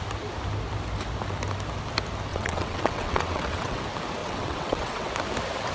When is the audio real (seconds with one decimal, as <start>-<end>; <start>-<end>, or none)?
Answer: 0.0-2.3; 3.8-4.2; 5.1-5.7